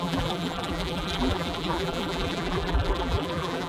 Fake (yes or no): yes